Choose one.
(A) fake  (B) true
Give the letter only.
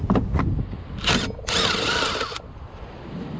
B